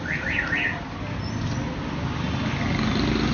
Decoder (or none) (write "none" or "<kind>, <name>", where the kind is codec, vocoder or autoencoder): none